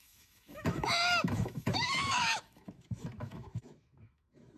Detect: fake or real fake